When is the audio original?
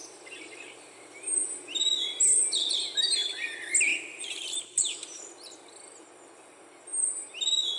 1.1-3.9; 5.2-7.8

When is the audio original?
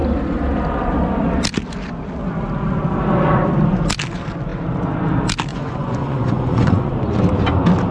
0.0-5.5; 6.9-7.9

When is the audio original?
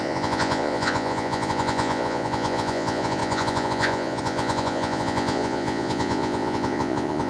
none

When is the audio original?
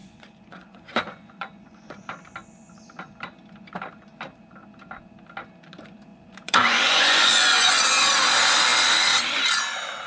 2.0-6.1; 7.8-10.1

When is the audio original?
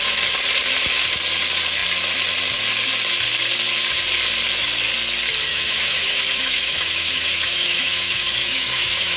0.0-5.5